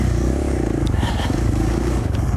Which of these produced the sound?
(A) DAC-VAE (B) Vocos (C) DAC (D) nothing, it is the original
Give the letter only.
C